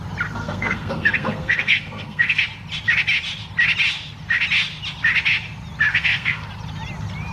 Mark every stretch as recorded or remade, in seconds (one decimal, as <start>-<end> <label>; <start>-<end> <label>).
0.0-0.4 recorded; 0.4-2.4 remade; 2.4-5.9 recorded; 5.9-6.5 remade; 6.5-7.3 recorded